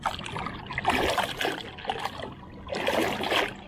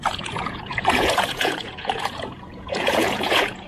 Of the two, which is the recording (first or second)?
first